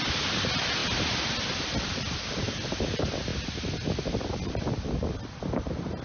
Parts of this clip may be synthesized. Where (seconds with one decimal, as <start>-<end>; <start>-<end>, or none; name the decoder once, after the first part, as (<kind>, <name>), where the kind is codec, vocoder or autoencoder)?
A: none